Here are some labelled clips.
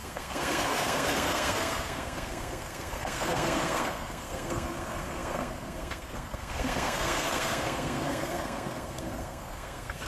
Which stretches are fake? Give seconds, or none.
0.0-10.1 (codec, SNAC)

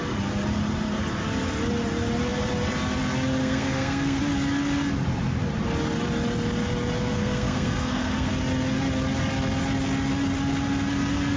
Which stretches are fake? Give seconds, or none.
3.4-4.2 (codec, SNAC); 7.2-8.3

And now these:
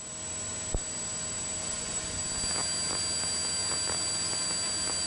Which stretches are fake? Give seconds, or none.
1.6-2.2 (vocoder, Vocos)

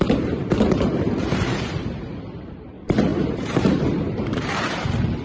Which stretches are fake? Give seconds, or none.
0.0-5.2 (vocoder, BigVGAN v2)